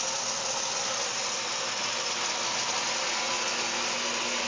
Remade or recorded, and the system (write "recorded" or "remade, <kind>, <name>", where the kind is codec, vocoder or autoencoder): recorded